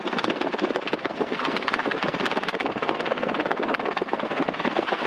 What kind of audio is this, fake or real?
fake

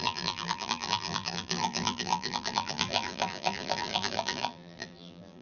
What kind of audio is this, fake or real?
fake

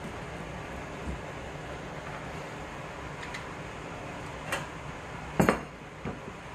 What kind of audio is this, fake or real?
real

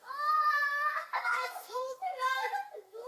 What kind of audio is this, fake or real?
fake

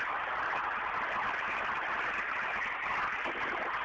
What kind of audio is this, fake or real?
real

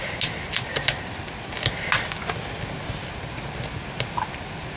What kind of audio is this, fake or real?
real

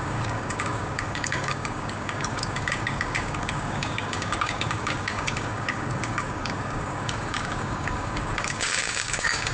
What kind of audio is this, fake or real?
fake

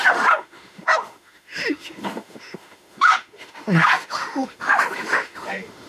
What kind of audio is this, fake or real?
fake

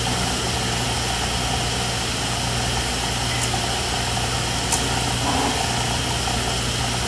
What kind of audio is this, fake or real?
real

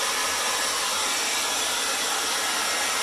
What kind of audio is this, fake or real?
real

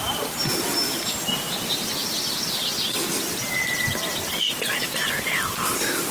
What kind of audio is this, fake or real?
real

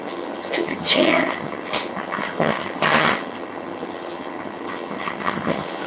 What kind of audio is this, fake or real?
fake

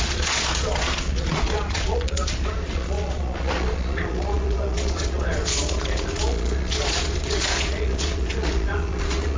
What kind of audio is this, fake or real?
fake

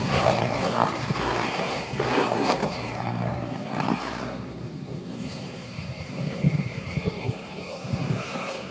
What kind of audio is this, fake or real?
fake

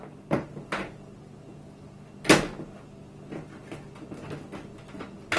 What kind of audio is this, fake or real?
real